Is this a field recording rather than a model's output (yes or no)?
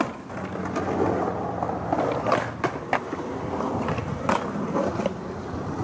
yes